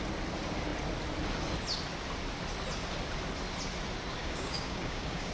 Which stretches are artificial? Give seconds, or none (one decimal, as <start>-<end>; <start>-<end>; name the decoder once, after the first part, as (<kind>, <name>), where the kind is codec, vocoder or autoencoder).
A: 4.2-5.3 (codec, DAC)